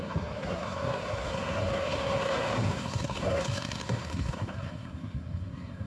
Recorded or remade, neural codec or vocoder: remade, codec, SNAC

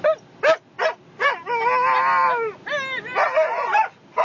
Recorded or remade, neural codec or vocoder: recorded